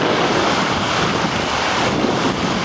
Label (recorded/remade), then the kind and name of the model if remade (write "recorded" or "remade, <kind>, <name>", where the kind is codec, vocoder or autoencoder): remade, codec, DAC